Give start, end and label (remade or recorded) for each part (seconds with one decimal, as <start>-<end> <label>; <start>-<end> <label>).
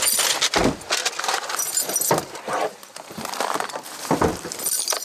0.0-5.0 recorded